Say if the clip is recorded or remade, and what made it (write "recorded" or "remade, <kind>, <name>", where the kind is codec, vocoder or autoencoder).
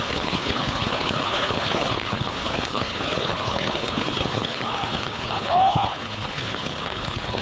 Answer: remade, codec, HILCodec